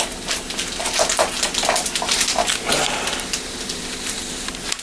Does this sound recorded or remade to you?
recorded